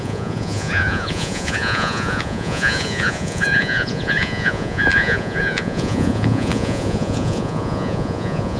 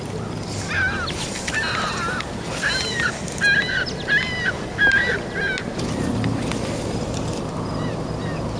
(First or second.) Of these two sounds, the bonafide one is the second